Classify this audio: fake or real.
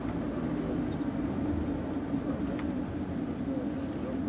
real